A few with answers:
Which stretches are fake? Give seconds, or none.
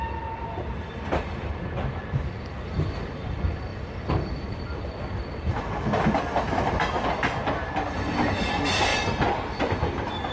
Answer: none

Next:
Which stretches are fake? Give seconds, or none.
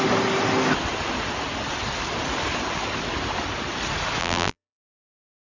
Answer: 4.2-4.9 (vocoder, BigVGAN v2)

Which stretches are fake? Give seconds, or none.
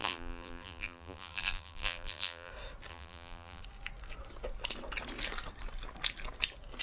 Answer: 0.0-2.5 (vocoder, BigVGAN v2); 2.9-3.6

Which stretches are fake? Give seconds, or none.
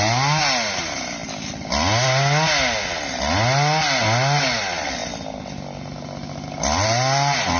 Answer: none